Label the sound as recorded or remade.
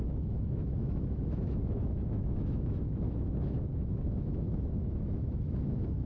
remade